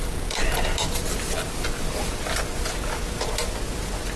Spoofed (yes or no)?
no